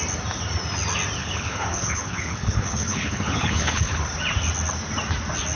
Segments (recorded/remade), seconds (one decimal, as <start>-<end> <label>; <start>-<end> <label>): 0.0-1.2 recorded; 1.2-4.0 remade; 4.0-5.6 recorded